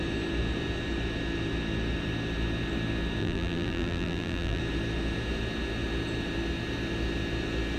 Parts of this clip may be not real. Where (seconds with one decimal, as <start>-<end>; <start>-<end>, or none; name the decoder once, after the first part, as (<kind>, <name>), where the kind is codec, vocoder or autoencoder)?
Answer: 3.2-4.6 (vocoder, BigVGAN v2)